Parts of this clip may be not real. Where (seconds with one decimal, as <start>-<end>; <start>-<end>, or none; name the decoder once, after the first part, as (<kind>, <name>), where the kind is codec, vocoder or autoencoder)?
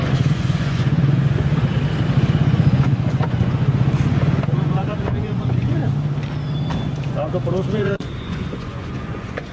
0.0-1.5 (vocoder, Vocos); 2.2-5.8; 7.1-9.5